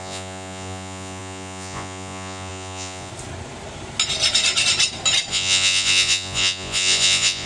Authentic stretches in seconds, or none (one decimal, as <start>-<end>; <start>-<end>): 3.1-5.3